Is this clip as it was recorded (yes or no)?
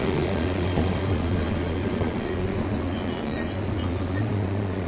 no